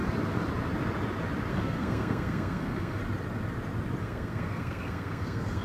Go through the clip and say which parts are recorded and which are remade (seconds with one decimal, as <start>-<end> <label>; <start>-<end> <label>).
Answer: 0.0-1.5 recorded; 1.5-3.0 remade; 3.0-4.0 recorded; 4.0-5.6 remade